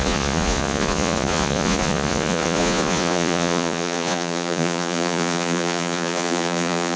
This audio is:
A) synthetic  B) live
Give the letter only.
A